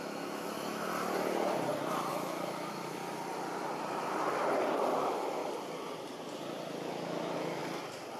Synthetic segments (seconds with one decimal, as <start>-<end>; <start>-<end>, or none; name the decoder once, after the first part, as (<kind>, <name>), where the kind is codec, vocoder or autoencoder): 0.0-0.9 (autoencoder, DAC-VAE); 2.1-3.0; 5.0-5.4; 6.7-7.6